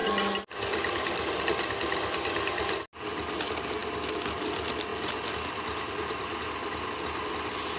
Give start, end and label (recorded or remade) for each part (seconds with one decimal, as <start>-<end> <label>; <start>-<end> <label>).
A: 0.0-7.8 recorded